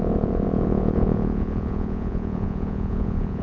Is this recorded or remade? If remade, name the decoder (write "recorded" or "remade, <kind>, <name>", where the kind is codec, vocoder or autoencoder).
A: remade, vocoder, Vocos